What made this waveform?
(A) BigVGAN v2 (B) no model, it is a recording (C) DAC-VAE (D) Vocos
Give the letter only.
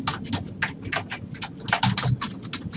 B